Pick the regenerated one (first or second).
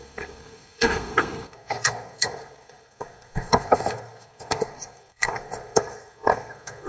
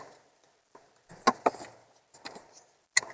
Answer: first